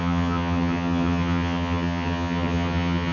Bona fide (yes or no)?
no